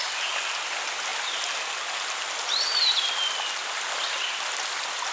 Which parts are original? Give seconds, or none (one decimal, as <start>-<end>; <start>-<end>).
0.0-5.1